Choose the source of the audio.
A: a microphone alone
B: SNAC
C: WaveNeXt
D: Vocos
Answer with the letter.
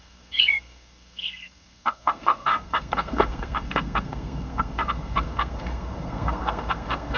B